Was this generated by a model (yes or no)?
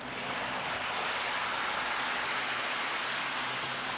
no